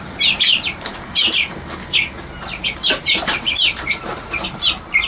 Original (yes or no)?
no